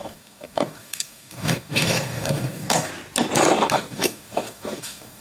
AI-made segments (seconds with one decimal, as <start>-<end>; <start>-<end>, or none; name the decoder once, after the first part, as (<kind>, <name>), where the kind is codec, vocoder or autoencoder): 0.0-2.9 (codec, DAC); 3.7-5.2